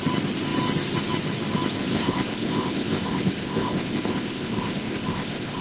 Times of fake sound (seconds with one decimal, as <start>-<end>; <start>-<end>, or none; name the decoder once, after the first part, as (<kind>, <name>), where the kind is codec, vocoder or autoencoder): 1.8-5.6 (codec, ZipCodec)